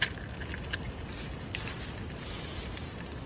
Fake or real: real